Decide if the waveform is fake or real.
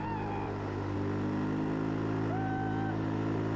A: real